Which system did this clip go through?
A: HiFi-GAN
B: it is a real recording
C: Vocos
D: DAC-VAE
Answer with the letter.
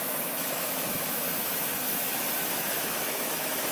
D